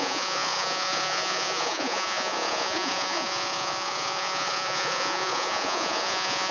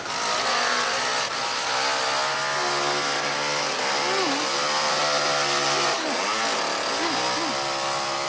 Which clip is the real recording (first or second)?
second